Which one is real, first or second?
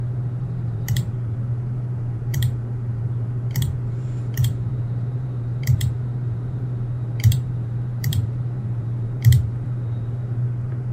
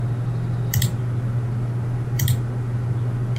second